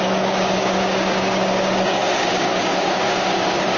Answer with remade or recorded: remade